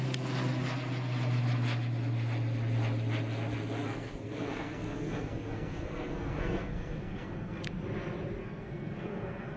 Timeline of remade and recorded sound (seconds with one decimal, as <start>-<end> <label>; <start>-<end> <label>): 0.0-3.8 recorded; 3.8-7.6 remade; 7.6-8.4 recorded; 8.4-9.6 remade